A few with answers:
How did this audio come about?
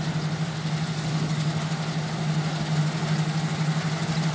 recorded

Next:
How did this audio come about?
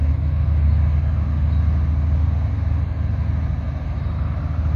recorded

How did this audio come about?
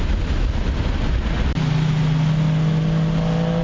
recorded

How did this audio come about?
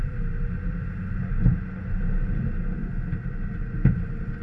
recorded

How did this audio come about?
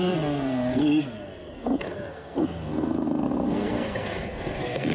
remade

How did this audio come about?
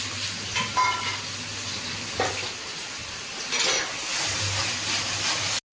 recorded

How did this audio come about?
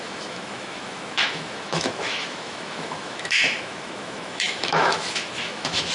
remade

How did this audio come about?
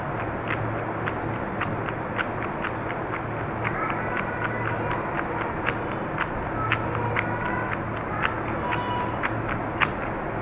recorded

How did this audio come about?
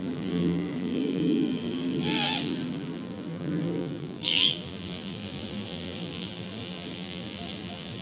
remade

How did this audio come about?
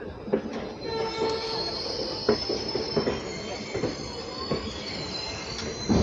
recorded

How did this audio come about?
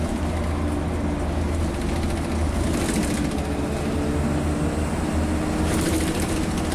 recorded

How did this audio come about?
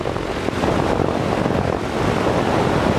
recorded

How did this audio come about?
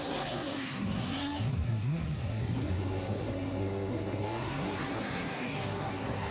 remade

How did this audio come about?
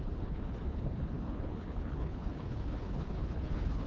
remade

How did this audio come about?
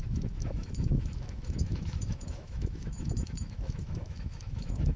remade